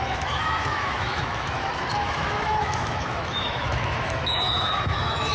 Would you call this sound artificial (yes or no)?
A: yes